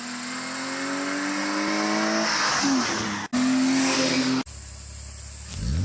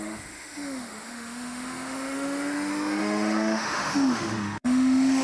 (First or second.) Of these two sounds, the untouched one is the first